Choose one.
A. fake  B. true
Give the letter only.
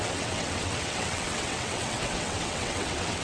A